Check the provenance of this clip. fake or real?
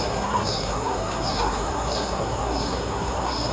fake